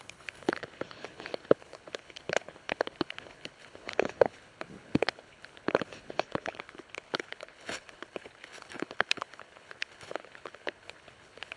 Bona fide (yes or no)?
no